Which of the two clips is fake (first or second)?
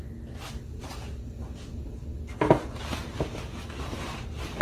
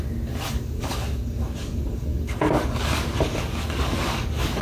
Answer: second